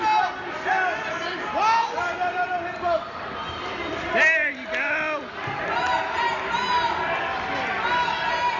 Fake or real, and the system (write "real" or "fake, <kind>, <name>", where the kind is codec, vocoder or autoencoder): real